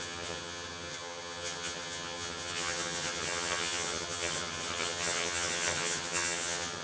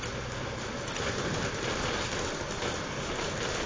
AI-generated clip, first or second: first